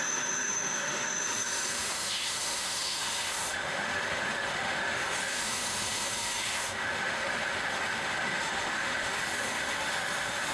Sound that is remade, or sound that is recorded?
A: remade